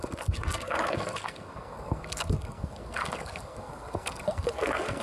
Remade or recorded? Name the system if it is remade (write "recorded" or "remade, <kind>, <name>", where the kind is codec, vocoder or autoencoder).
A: remade, codec, SNAC